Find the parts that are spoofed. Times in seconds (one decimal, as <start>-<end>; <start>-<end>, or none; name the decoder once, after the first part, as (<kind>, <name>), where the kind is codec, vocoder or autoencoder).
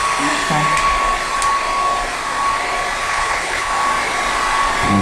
3.0-3.7 (codec, HILCodec)